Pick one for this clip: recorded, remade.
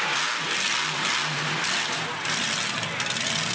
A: recorded